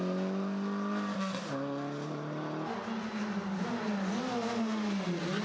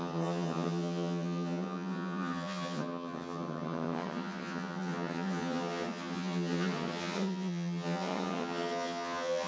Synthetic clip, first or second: second